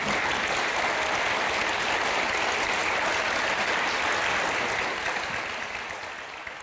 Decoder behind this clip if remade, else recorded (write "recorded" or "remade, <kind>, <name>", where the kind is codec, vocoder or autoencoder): recorded